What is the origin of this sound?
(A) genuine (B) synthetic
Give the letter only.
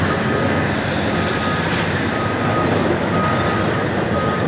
A